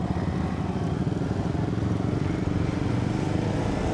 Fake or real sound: real